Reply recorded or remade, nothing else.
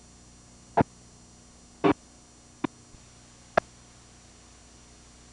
recorded